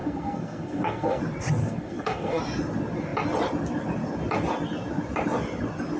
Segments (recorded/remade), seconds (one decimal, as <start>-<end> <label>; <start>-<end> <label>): 0.0-1.2 remade; 1.2-1.6 recorded; 1.6-2.4 remade; 2.4-6.0 recorded